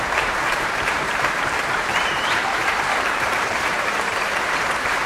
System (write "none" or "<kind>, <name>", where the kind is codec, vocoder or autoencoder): vocoder, BigVGAN v2